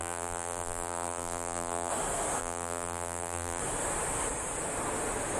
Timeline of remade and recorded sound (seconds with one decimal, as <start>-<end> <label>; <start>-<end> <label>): 0.0-1.9 remade; 1.9-2.4 recorded; 2.4-3.6 remade; 3.6-5.4 recorded